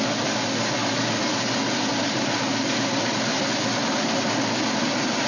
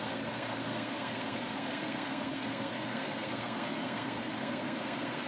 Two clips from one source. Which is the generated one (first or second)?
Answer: second